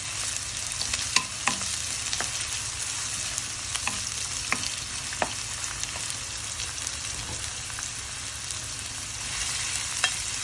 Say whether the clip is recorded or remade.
recorded